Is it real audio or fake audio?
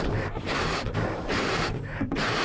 fake